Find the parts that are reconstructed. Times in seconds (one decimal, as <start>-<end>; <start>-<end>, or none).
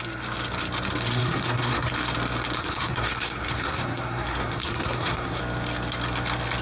1.2-1.9; 2.6-5.4